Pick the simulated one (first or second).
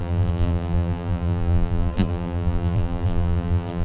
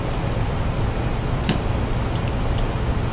first